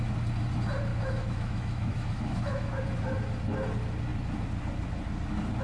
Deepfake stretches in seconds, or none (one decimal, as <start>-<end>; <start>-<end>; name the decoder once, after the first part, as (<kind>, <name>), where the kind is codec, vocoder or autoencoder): 0.9-2.8 (autoencoder, DAC-VAE)